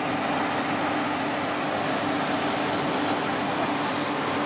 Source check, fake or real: real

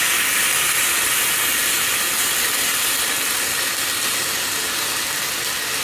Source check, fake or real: real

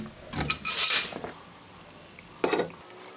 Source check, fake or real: real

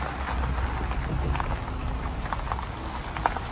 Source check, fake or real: real